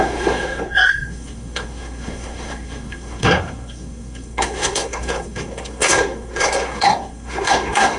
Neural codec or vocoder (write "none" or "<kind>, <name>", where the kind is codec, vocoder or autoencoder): codec, SNAC